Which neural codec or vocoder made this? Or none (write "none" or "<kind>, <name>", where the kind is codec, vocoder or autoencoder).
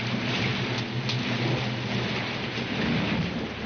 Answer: none